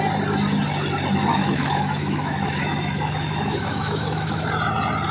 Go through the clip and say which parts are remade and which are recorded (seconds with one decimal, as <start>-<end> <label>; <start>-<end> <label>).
0.0-1.3 recorded; 1.3-4.4 remade; 4.4-5.1 recorded